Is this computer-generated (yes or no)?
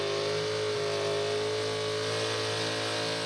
no